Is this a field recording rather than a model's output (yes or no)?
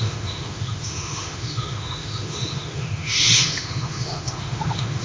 no